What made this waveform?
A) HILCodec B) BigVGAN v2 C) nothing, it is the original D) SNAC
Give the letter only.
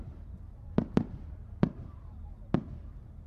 B